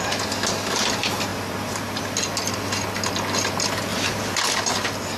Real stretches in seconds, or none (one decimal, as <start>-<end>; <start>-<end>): 0.0-1.3; 2.0-3.9; 4.4-5.2